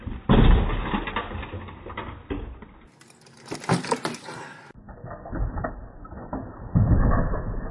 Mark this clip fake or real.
real